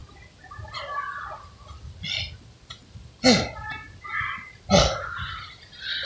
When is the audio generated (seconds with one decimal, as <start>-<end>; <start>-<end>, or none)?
none